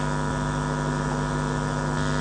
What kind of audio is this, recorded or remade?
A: recorded